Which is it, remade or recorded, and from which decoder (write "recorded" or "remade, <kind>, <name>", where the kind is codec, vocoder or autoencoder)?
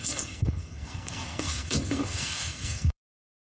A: remade, codec, SNAC